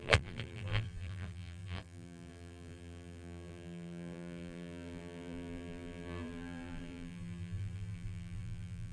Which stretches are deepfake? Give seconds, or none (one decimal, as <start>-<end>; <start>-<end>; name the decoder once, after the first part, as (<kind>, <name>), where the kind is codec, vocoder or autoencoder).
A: 0.0-8.9 (vocoder, BigVGAN v2)